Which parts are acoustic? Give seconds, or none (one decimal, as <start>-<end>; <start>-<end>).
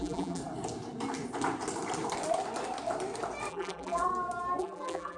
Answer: 0.4-3.5; 4.1-4.6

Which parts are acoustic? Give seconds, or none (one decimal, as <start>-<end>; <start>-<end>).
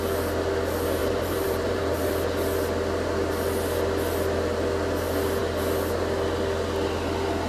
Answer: 0.0-1.0; 2.1-7.5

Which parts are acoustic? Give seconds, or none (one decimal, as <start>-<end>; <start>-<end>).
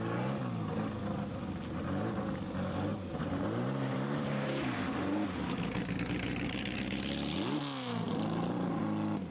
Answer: 0.0-2.9; 7.6-9.3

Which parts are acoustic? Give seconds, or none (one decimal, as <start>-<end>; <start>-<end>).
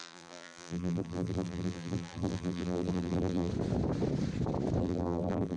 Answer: 3.5-4.8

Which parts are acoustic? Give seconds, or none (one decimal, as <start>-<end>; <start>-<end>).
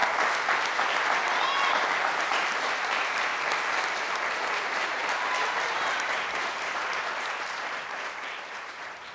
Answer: 0.0-2.2; 3.3-4.5; 5.0-5.7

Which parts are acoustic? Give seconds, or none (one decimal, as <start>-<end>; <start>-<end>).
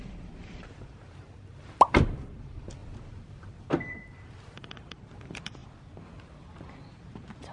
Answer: 5.6-6.9